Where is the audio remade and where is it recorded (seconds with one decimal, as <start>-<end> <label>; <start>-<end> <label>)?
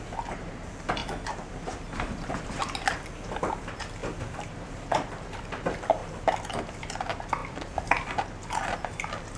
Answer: 0.0-1.0 recorded; 1.0-2.5 remade; 2.5-4.0 recorded; 4.0-5.2 remade; 5.2-7.4 recorded; 7.4-8.1 remade; 8.1-9.4 recorded